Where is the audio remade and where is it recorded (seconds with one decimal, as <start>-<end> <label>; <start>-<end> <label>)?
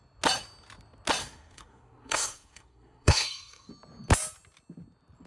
0.0-1.2 recorded; 1.2-3.7 remade; 3.7-5.3 recorded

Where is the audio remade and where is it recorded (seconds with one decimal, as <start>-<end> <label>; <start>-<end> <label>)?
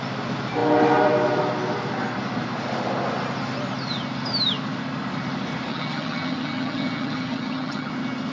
0.0-5.7 recorded; 5.7-7.9 remade; 7.9-8.3 recorded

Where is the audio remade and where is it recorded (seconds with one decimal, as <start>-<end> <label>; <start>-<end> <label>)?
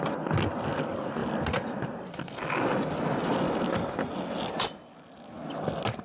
0.0-6.0 recorded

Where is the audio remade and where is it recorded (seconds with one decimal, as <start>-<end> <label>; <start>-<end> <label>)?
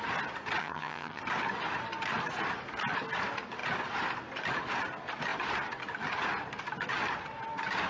0.0-0.6 recorded; 0.6-1.2 remade; 1.2-7.9 recorded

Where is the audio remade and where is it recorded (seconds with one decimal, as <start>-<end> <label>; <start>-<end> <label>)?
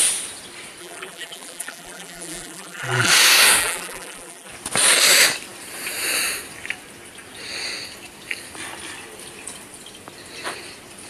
0.0-0.8 recorded; 0.8-3.1 remade; 3.1-3.6 recorded; 3.6-4.5 remade; 4.5-11.1 recorded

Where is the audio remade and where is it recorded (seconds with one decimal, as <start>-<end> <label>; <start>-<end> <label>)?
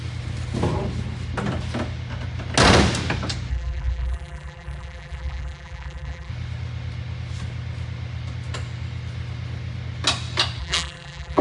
0.0-3.5 recorded; 3.5-6.3 remade; 6.3-10.6 recorded; 10.6-11.4 remade